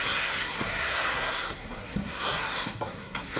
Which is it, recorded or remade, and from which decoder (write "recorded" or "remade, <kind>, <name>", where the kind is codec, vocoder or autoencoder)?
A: remade, codec, SNAC